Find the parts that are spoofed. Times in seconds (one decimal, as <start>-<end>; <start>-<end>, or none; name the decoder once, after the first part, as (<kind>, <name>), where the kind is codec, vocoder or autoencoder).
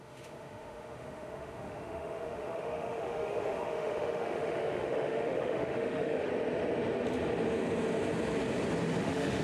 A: 0.0-6.3 (autoencoder, DAC-VAE); 9.0-9.4